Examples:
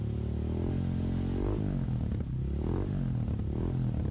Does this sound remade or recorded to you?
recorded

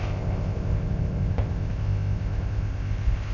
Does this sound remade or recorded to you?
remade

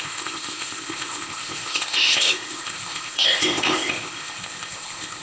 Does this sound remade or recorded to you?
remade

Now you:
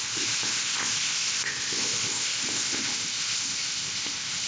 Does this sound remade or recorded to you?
remade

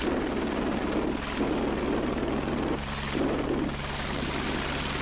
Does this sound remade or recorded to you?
recorded